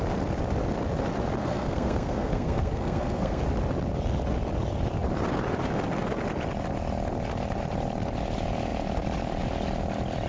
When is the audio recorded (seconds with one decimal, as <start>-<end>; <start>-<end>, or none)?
0.0-1.4; 3.4-10.3